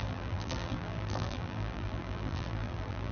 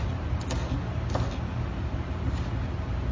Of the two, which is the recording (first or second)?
second